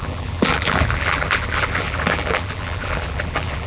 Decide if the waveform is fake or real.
fake